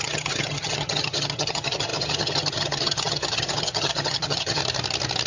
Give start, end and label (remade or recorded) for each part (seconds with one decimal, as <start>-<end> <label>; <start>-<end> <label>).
0.0-4.6 remade; 4.6-5.3 recorded